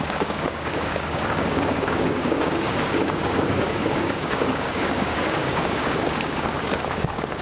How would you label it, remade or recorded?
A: remade